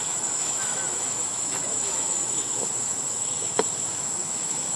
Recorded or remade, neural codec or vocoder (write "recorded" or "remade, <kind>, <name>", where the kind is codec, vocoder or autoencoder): remade, autoencoder, DAC-VAE